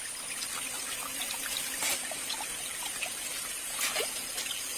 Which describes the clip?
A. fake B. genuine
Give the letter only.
B